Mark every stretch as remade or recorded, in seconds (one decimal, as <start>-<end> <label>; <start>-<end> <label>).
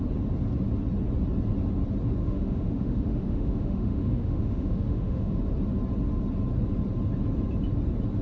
0.0-2.2 recorded; 2.2-5.4 remade; 5.4-8.2 recorded